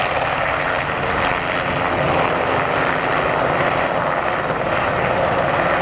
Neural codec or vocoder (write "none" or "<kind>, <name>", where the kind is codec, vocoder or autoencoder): none